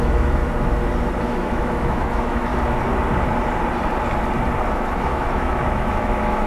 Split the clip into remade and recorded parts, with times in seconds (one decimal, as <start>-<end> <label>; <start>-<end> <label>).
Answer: 0.0-0.4 remade; 0.4-1.2 recorded; 1.2-2.5 remade; 2.5-4.6 recorded; 4.6-6.5 remade